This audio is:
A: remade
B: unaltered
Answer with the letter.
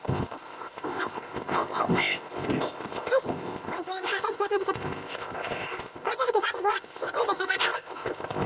A